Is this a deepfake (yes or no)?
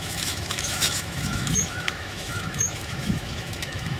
yes